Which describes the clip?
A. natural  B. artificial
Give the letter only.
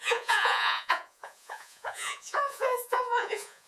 B